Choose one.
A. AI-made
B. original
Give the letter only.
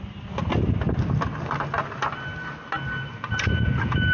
B